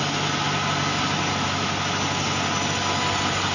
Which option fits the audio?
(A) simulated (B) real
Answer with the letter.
B